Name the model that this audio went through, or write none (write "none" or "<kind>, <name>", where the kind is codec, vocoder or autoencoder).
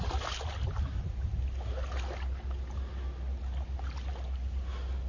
none